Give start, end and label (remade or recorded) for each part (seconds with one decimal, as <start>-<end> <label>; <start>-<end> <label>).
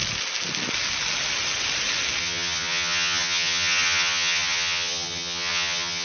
0.0-2.2 recorded; 2.2-6.0 remade